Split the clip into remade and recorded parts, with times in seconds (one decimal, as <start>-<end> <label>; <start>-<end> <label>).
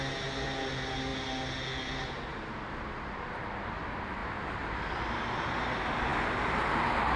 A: 0.0-2.3 recorded; 2.3-3.4 remade; 3.4-4.2 recorded; 4.2-5.0 remade; 5.0-7.2 recorded